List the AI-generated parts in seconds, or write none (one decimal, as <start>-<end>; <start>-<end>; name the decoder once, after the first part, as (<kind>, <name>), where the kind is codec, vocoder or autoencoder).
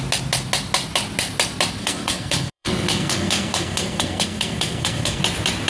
1.8-5.2 (codec, SNAC)